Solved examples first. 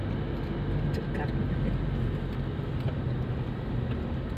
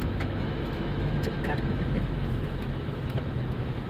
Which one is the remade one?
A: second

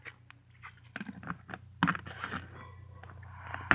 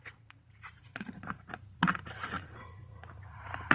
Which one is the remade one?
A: second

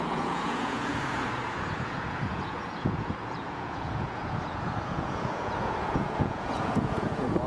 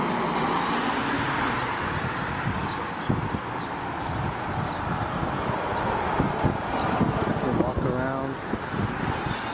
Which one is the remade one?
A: first